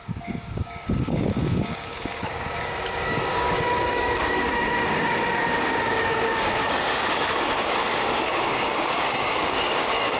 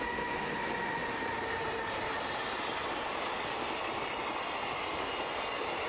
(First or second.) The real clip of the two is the second